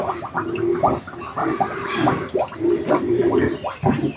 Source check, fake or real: fake